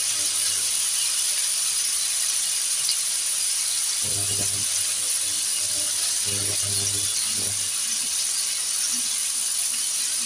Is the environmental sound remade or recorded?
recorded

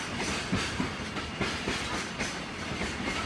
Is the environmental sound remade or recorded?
recorded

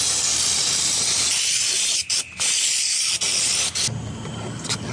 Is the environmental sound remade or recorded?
recorded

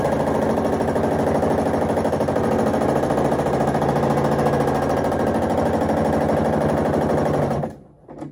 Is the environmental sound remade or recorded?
recorded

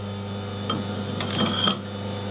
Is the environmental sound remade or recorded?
recorded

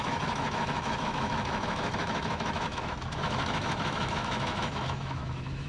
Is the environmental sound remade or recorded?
remade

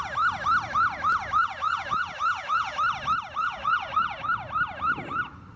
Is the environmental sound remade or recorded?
recorded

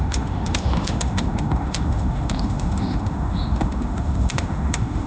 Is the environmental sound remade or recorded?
remade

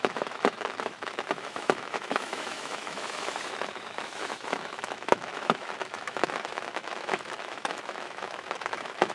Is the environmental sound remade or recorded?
remade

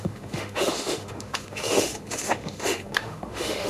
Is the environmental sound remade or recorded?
remade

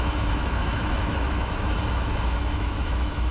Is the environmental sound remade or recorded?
remade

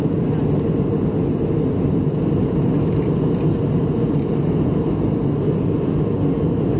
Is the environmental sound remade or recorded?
recorded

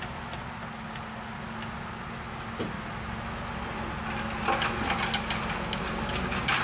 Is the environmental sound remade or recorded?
recorded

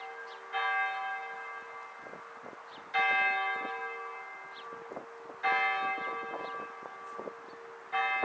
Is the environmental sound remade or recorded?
recorded